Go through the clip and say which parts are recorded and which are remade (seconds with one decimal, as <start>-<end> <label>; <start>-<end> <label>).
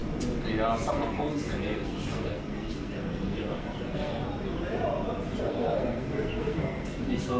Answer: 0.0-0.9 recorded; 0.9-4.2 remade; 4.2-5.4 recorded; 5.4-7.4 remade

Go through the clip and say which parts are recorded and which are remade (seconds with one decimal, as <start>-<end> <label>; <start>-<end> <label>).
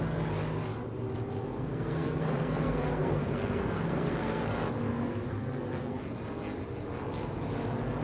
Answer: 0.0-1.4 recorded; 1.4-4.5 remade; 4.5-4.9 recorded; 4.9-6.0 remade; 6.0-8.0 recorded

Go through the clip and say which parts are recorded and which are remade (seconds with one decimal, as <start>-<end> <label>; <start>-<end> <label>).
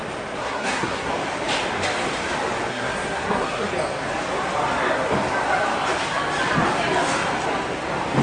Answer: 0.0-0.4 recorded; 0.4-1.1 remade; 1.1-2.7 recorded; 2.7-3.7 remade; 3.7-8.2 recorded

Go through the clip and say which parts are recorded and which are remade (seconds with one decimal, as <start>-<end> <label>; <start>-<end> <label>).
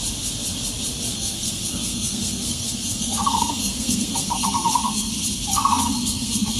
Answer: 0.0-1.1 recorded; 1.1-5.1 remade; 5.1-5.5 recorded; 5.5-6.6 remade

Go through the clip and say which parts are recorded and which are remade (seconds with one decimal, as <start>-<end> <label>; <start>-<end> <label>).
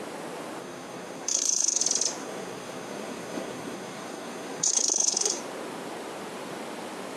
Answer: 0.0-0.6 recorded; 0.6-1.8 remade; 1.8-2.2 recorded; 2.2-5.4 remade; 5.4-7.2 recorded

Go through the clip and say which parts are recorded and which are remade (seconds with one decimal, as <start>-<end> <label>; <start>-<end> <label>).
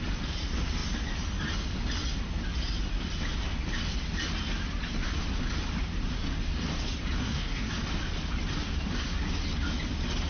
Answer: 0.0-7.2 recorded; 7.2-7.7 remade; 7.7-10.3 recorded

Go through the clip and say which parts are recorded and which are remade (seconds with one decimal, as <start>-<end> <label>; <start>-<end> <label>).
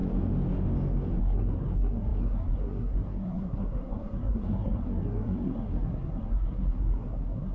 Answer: 0.0-1.2 recorded; 1.2-7.5 remade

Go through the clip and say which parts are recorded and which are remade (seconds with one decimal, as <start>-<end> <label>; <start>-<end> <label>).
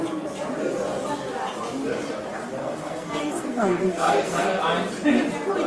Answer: 0.0-2.6 recorded; 2.6-4.6 remade; 4.6-5.7 recorded